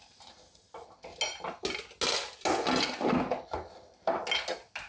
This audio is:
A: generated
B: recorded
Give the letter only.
B